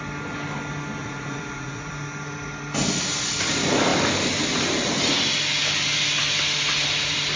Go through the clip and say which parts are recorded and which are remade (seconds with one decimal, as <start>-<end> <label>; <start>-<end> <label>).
0.0-1.0 recorded; 1.0-1.9 remade; 1.9-7.4 recorded